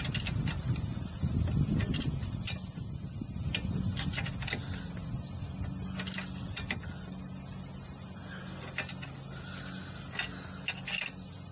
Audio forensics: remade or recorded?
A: recorded